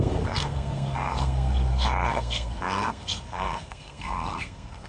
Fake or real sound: fake